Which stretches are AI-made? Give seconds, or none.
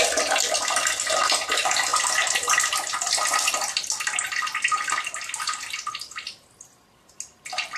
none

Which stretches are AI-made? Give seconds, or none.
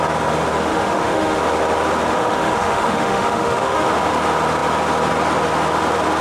0.7-1.4 (autoencoder, DAC-VAE); 2.1-3.9